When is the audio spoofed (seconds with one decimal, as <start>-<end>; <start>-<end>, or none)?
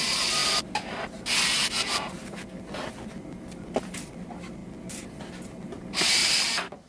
none